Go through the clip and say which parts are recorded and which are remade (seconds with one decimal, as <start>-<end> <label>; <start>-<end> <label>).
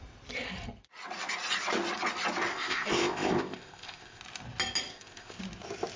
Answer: 0.0-2.5 recorded; 2.5-4.2 remade; 4.2-4.9 recorded; 4.9-5.4 remade; 5.4-6.0 recorded